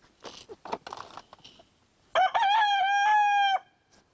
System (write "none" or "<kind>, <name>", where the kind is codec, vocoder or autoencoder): none